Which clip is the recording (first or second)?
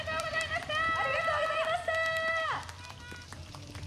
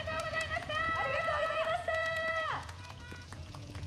first